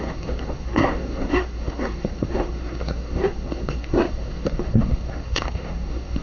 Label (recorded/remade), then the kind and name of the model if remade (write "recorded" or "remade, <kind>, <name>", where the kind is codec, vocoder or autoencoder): remade, codec, SNAC